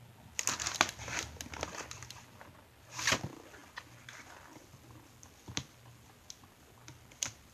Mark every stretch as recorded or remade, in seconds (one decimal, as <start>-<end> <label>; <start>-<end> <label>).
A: 0.0-7.5 recorded